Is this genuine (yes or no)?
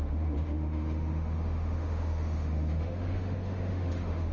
no